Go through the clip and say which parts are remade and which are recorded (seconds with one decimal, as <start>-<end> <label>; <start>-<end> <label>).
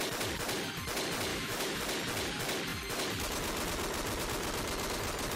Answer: 0.0-1.3 recorded; 1.3-1.8 remade; 1.8-5.3 recorded